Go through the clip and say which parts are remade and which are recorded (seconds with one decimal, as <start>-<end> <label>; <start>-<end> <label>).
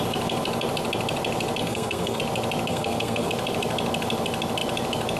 0.0-1.6 recorded; 1.6-2.2 remade; 2.2-2.7 recorded; 2.7-3.3 remade; 3.3-5.2 recorded